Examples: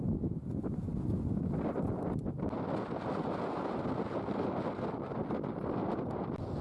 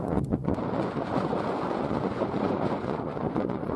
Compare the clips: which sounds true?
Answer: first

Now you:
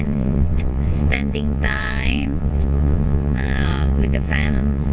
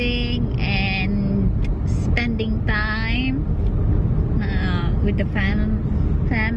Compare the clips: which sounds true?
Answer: second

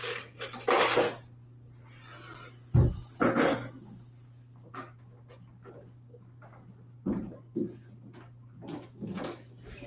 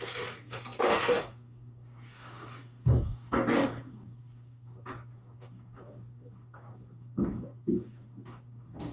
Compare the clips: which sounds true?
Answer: first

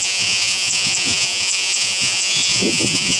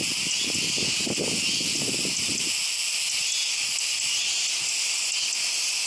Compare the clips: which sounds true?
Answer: second